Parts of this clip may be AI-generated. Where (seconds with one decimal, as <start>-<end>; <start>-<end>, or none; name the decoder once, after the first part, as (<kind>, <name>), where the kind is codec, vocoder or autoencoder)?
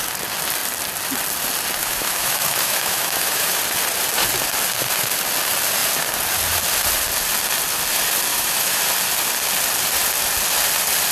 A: 1.8-3.6 (autoencoder, DAC-VAE); 8.3-8.8